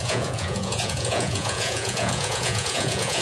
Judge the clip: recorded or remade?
remade